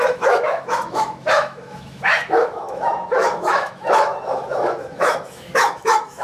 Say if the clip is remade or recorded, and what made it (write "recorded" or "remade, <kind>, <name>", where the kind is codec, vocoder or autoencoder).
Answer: remade, autoencoder, DAC-VAE